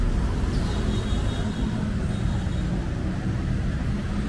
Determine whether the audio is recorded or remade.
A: recorded